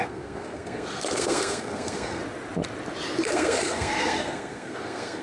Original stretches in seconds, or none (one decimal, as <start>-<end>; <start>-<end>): 2.2-3.3